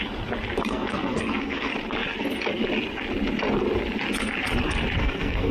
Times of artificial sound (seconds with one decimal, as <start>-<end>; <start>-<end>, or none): 0.7-1.7; 5.0-5.5